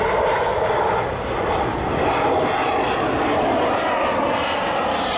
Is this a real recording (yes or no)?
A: yes